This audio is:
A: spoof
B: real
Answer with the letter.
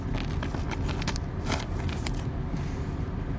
B